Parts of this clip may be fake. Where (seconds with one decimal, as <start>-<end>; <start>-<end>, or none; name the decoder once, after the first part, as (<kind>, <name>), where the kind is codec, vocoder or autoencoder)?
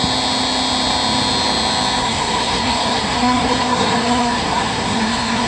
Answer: 2.0-5.5 (codec, SNAC)